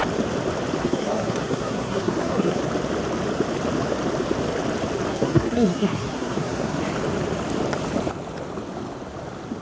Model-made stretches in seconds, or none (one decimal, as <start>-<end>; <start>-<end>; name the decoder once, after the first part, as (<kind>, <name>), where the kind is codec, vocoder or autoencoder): 0.8-2.6 (codec, SNAC); 5.1-6.8